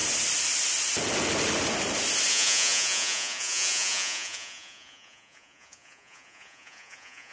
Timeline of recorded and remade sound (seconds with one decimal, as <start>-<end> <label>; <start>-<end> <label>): 0.0-2.3 recorded; 2.3-7.3 remade